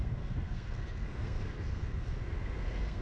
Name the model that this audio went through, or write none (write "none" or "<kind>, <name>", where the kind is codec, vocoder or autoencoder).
codec, SNAC